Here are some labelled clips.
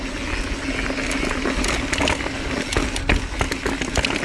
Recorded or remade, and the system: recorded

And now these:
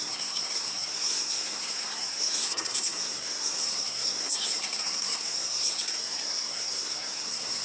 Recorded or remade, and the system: remade, codec, SNAC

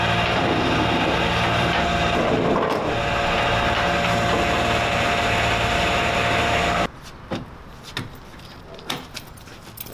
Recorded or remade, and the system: recorded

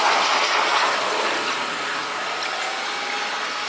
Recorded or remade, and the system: recorded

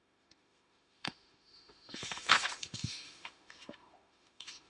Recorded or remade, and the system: remade, autoencoder, DAC-VAE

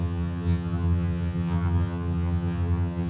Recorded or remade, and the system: remade, vocoder, HiFi-GAN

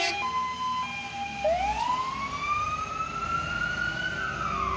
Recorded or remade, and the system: recorded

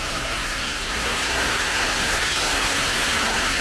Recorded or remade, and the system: remade, codec, SNAC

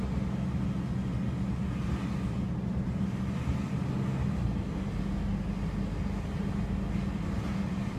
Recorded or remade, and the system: recorded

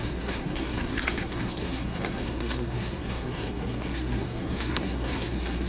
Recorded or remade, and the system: remade, codec, SNAC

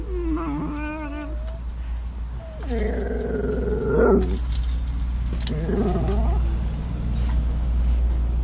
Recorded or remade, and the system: recorded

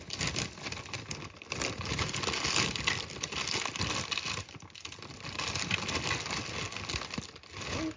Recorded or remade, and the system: recorded